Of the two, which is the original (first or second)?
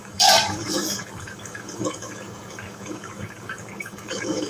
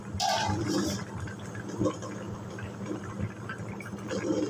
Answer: second